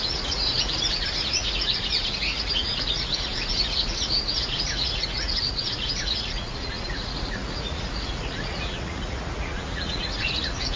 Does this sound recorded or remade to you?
remade